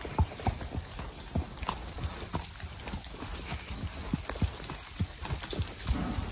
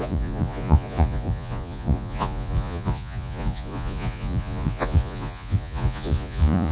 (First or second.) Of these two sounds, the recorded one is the first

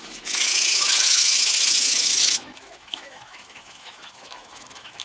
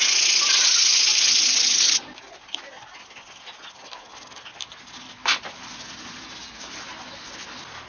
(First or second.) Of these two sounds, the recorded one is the second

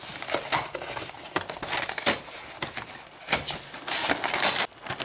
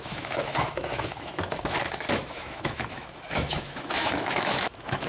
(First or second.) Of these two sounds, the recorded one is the first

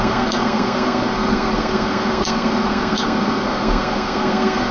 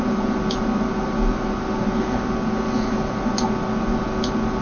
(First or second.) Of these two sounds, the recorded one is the second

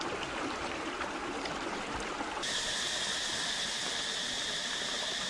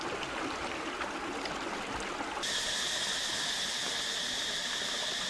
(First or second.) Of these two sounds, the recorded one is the second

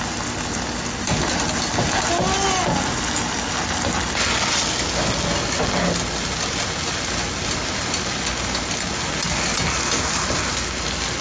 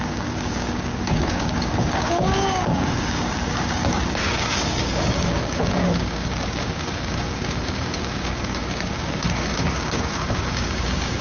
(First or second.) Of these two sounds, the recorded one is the first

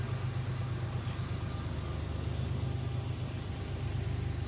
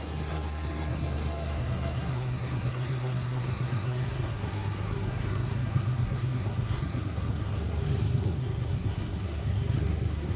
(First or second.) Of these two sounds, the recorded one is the first